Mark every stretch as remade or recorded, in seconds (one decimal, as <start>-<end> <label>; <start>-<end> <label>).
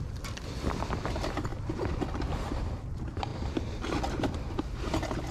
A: 0.0-3.3 remade; 3.3-4.1 recorded; 4.1-5.3 remade